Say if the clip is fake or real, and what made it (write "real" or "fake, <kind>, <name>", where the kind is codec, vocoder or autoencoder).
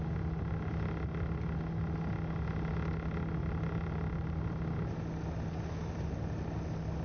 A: real